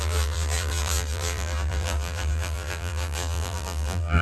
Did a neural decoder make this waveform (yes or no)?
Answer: yes